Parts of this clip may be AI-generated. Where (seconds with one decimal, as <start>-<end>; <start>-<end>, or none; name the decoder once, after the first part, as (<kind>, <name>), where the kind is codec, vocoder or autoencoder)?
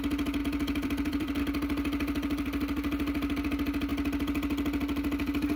0.4-1.4 (vocoder, BigVGAN v2)